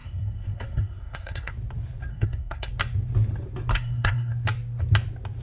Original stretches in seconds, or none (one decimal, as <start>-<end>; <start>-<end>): 1.5-2.1; 2.7-3.7; 4.3-5.4